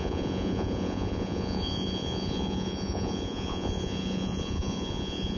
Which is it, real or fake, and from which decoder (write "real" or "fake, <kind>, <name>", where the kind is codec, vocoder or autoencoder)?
fake, vocoder, Vocos